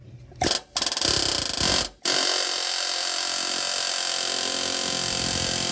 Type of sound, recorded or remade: recorded